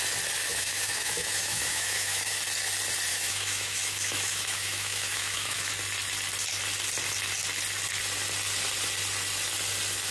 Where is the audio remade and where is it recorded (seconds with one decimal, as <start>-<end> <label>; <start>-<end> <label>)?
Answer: 0.0-0.5 recorded; 0.5-2.4 remade; 2.4-3.1 recorded; 3.1-5.7 remade; 5.7-10.1 recorded

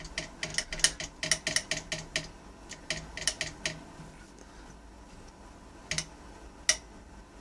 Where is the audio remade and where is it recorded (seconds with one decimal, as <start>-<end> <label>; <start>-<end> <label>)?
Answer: 0.0-7.4 recorded

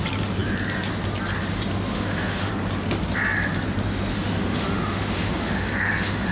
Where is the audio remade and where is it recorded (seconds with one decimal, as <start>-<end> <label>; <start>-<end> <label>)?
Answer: 0.0-1.9 recorded; 1.9-2.5 remade; 2.5-4.1 recorded; 4.1-6.3 remade

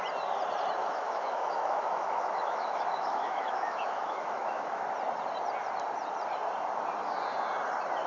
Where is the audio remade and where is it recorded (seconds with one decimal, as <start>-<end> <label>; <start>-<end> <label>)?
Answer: 0.0-0.8 recorded; 0.8-4.8 remade; 4.8-8.1 recorded

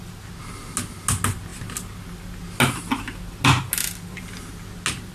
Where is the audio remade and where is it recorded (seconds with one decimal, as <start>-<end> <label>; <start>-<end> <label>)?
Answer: 0.0-5.1 recorded